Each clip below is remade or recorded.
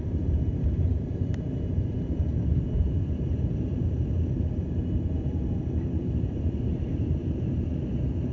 remade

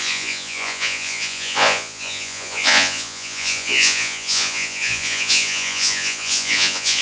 remade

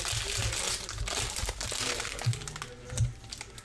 recorded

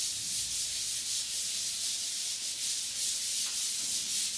recorded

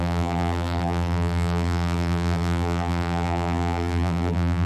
remade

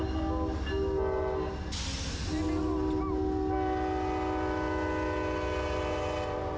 recorded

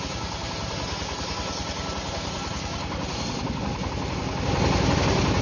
recorded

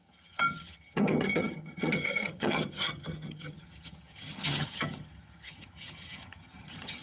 remade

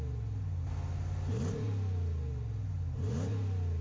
recorded